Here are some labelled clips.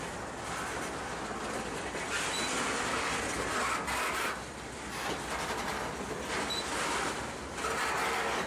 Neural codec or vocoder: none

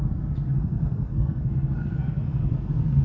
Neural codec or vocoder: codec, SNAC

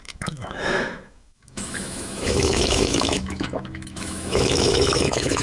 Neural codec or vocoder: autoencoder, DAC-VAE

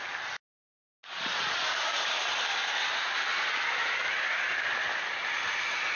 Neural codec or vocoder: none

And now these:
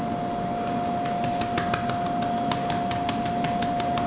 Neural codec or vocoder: none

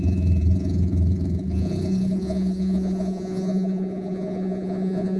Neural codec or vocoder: vocoder, Vocos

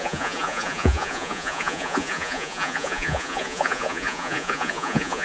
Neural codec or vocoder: vocoder, Vocos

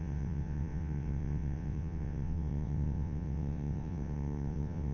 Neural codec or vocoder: vocoder, WaveNeXt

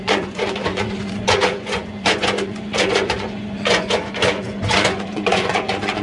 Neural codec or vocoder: vocoder, Vocos